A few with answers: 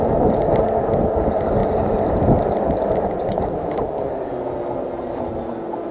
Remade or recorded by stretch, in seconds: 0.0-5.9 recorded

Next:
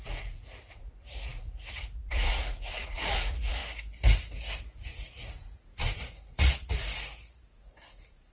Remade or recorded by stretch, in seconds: 0.0-3.6 remade; 3.6-4.6 recorded; 4.6-8.3 remade

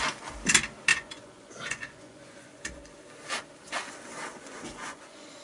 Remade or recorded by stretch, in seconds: 0.0-0.9 recorded; 0.9-3.0 remade; 3.0-4.3 recorded; 4.3-5.4 remade

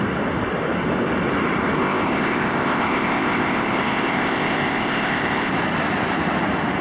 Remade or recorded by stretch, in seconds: 0.0-1.8 recorded; 1.8-5.5 remade; 5.5-6.8 recorded

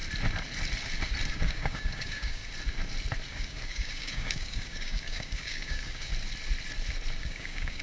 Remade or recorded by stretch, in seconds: 0.0-1.3 recorded; 1.3-2.4 remade; 2.4-3.3 recorded; 3.3-6.1 remade; 6.1-7.2 recorded; 7.2-7.8 remade

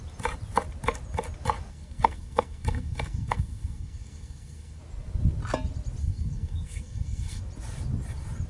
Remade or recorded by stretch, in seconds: 0.0-1.7 recorded; 1.7-4.8 remade; 4.8-6.0 recorded; 6.0-7.4 remade; 7.4-8.5 recorded